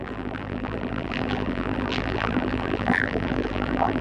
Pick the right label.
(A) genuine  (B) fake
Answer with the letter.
B